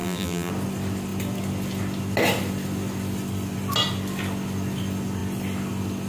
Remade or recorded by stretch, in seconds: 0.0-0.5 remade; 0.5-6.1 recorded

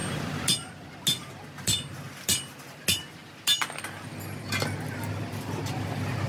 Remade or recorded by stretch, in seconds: 0.0-6.3 recorded

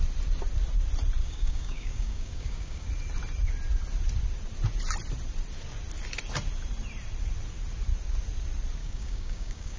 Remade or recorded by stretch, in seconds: 0.0-1.2 recorded; 1.2-2.9 remade; 2.9-8.8 recorded; 8.8-9.8 remade

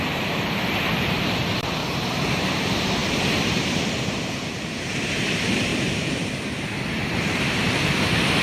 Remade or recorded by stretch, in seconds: 0.0-1.8 remade; 1.8-2.5 recorded; 2.5-8.4 remade

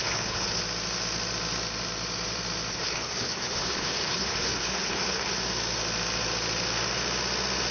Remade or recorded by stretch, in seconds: 0.0-0.6 remade; 0.6-2.7 recorded; 2.7-5.3 remade; 5.3-7.7 recorded

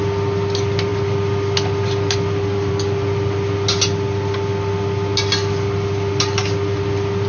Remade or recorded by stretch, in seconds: 0.0-7.3 recorded

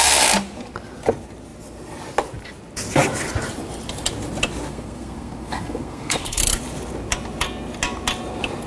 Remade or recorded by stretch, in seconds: 0.0-4.7 recorded; 4.7-6.4 remade; 6.4-8.7 recorded

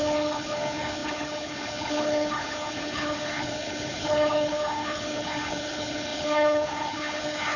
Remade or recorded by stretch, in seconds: 0.0-7.6 remade